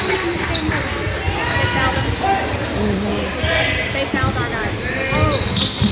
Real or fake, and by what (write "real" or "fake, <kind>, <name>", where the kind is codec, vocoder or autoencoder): real